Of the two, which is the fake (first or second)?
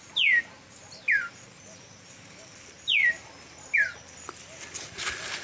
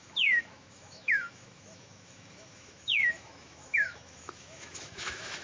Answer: second